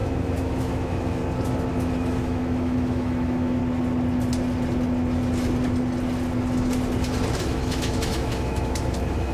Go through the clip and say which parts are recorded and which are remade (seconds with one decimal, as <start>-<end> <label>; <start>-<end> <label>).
0.0-1.2 remade; 1.2-1.7 recorded; 1.7-3.6 remade; 3.6-7.4 recorded; 7.4-9.3 remade